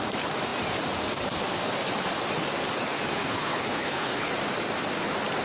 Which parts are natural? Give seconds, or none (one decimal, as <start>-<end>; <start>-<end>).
0.0-3.2; 4.3-5.4